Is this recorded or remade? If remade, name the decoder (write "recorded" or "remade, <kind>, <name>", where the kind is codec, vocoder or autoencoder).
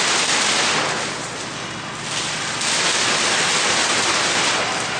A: recorded